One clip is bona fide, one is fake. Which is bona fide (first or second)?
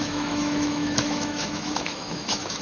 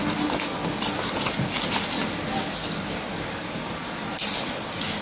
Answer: second